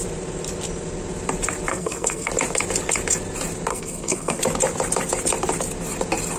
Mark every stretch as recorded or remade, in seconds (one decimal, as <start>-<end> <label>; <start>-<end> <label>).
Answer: 0.0-1.7 recorded; 1.7-2.3 remade; 2.3-3.7 recorded; 3.7-4.4 remade; 4.4-6.4 recorded